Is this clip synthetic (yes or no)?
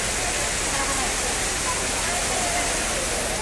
no